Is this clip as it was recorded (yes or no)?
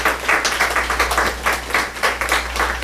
yes